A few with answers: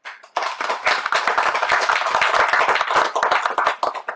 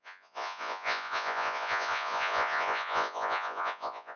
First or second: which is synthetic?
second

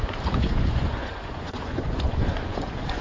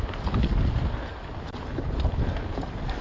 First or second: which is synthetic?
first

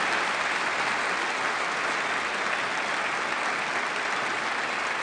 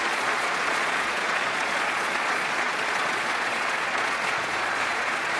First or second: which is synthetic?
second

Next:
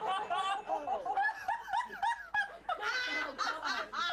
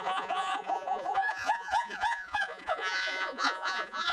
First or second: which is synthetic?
second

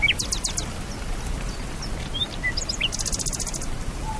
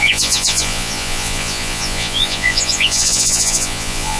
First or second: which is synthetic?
second